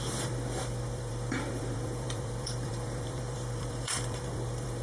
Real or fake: fake